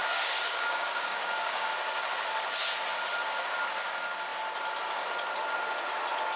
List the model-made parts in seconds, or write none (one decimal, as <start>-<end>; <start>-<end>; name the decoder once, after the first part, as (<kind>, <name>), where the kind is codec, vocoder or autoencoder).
0.0-2.0 (codec, DAC)